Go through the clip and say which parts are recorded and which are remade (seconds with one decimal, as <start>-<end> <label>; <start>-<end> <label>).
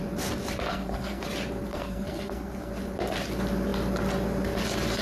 0.0-0.7 recorded; 0.7-1.2 remade; 1.2-1.7 recorded; 1.7-2.7 remade; 2.7-5.0 recorded